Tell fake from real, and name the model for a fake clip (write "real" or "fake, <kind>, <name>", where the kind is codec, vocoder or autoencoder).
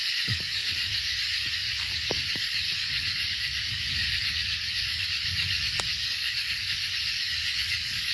fake, codec, DAC